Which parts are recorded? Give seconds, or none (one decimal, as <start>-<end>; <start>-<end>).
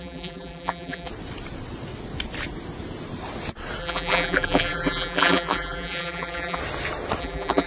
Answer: 1.1-3.8; 6.6-7.2